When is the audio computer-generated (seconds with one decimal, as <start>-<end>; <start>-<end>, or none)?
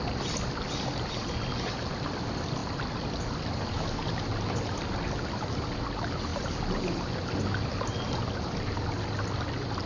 none